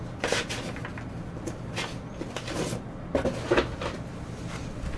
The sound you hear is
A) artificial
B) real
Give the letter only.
B